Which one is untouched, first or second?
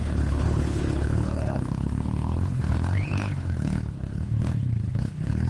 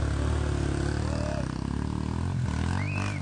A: second